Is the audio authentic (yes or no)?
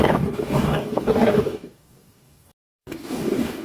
no